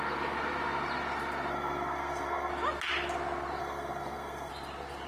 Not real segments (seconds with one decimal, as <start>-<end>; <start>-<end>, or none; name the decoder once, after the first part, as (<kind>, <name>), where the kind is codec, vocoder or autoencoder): 1.5-2.5 (codec, SNAC); 3.6-4.5